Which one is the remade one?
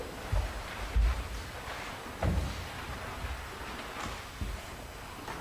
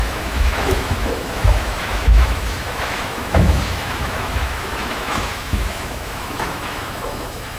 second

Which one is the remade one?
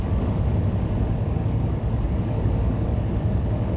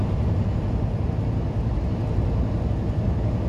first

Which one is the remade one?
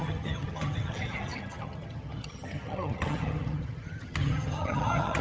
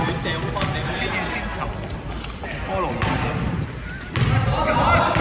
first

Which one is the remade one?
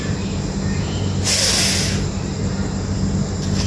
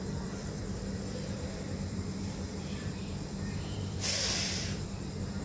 second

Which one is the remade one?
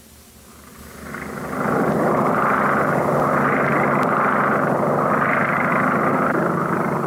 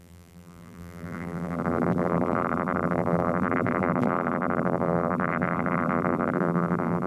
second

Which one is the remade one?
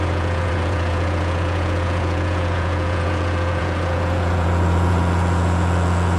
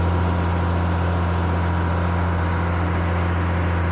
first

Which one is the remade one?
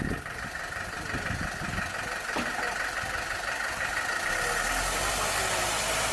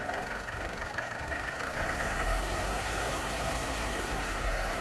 second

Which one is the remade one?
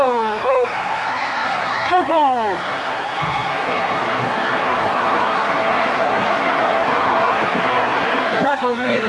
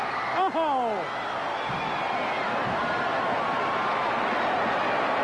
first